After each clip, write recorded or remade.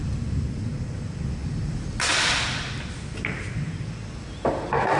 recorded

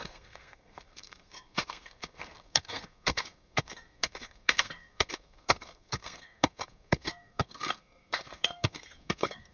remade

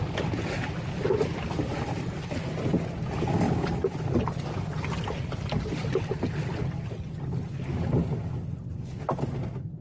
recorded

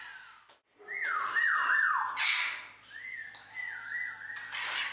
recorded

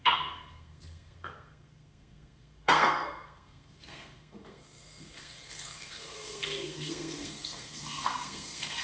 remade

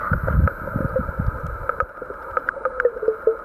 recorded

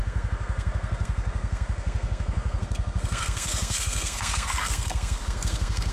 remade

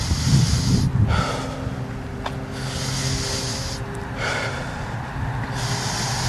recorded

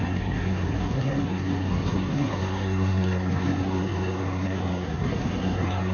remade